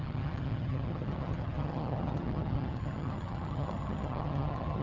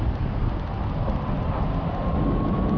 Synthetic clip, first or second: first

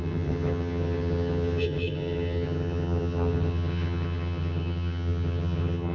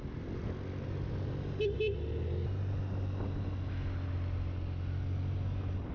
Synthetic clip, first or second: first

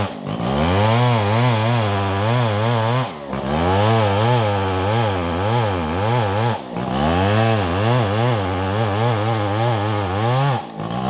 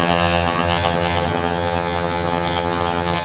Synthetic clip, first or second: second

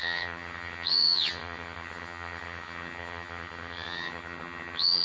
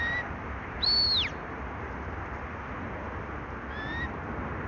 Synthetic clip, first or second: first